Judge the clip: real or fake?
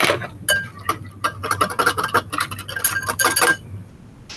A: real